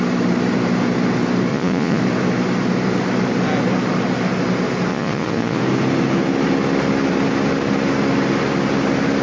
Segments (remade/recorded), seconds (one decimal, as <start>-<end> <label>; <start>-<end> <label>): 0.0-1.5 recorded; 1.5-2.0 remade; 2.0-4.9 recorded; 4.9-5.6 remade; 5.6-9.2 recorded